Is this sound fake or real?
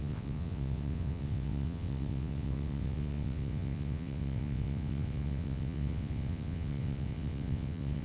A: fake